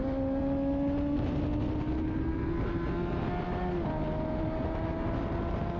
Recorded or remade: recorded